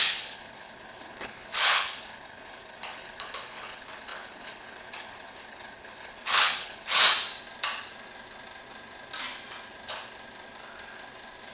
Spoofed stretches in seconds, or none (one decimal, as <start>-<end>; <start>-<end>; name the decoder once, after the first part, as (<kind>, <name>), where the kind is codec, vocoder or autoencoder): 0.0-6.9 (codec, HILCodec)